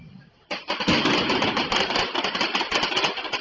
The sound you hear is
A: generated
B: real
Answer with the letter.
B